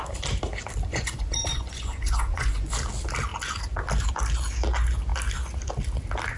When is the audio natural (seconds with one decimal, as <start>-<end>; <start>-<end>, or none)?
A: 0.0-0.9; 2.7-6.4